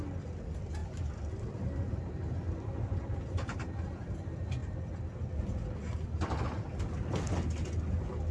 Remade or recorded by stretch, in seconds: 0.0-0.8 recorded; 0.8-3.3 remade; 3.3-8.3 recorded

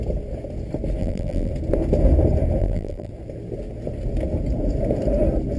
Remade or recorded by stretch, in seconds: 0.0-1.0 recorded; 1.0-1.5 remade; 1.5-2.6 recorded; 2.6-3.1 remade; 3.1-5.6 recorded